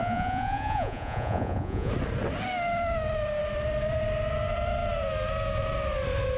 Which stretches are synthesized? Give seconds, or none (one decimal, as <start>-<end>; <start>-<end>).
0.0-1.9